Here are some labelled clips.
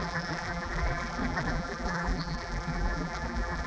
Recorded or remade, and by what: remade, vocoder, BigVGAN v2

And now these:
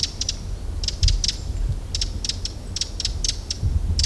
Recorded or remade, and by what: recorded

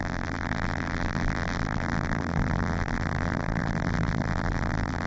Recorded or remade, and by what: remade, vocoder, BigVGAN v2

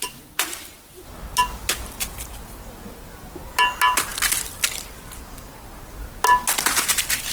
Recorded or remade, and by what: recorded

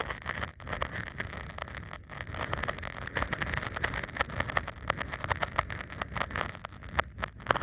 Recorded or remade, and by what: recorded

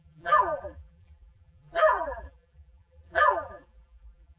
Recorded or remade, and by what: remade, vocoder, BigVGAN v2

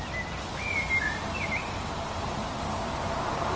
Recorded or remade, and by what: recorded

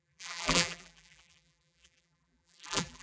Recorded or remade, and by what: remade, vocoder, BigVGAN v2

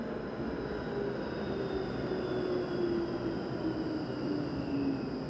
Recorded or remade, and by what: recorded